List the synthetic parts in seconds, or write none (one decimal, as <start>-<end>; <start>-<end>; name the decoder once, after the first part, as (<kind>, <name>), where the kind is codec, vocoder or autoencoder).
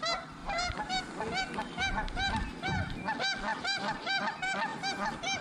0.4-1.0 (vocoder, BigVGAN v2); 3.5-4.3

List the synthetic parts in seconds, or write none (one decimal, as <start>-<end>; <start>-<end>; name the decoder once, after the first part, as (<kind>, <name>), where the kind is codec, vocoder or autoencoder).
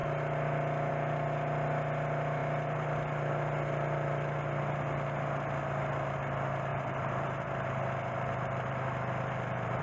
6.7-9.8 (vocoder, BigVGAN v2)